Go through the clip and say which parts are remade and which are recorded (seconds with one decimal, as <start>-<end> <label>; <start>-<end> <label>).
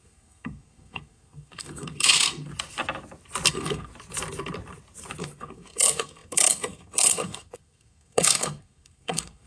0.0-2.5 remade; 2.5-3.5 recorded; 3.5-3.9 remade; 3.9-5.2 recorded; 5.2-9.5 remade